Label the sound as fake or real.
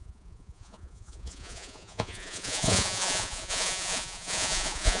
fake